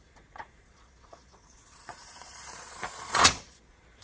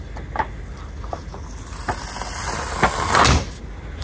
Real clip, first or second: second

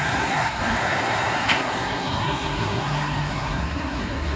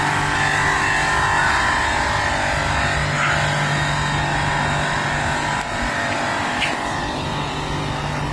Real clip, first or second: second